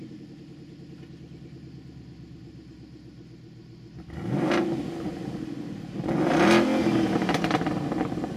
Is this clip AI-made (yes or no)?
no